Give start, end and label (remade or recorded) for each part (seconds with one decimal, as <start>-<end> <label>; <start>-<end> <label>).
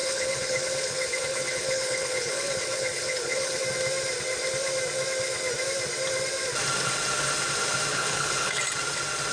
0.0-3.6 remade; 3.6-7.9 recorded; 7.9-8.6 remade; 8.6-9.3 recorded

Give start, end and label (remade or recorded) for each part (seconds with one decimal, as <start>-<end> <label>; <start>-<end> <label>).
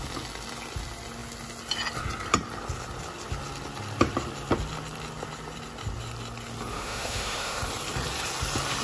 0.0-6.7 recorded; 6.7-7.6 remade; 7.6-8.8 recorded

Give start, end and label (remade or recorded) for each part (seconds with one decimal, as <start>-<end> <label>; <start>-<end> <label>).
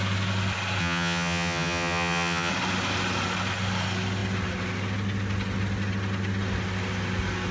0.0-0.8 recorded; 0.8-2.5 remade; 2.5-7.5 recorded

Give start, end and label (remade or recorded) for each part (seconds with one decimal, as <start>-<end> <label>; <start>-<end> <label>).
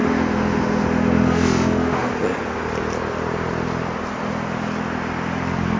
0.0-2.1 remade; 2.1-5.8 recorded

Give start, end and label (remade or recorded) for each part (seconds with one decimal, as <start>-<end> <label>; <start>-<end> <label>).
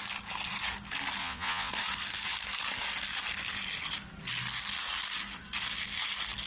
0.0-1.2 recorded; 1.2-1.7 remade; 1.7-6.5 recorded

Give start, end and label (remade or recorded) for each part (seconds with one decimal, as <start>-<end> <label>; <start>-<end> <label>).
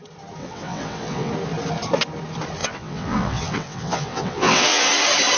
0.0-0.4 recorded; 0.4-1.3 remade; 1.3-2.6 recorded; 2.6-4.9 remade; 4.9-5.4 recorded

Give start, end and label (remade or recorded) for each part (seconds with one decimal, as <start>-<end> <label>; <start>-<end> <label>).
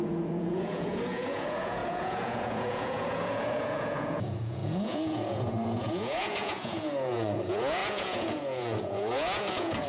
0.0-9.9 remade